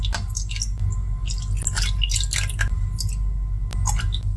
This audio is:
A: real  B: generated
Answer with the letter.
A